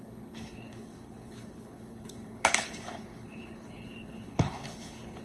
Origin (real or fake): fake